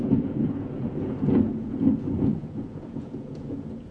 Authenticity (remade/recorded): remade